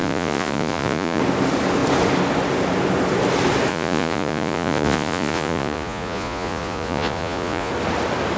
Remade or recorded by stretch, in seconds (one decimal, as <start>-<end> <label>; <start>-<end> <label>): 0.0-1.2 remade; 1.2-3.7 recorded; 3.7-7.7 remade; 7.7-8.4 recorded